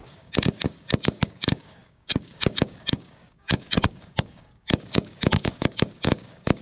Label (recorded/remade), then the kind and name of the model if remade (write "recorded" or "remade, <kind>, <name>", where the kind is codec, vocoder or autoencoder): remade, codec, DAC